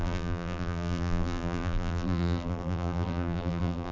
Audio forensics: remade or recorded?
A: remade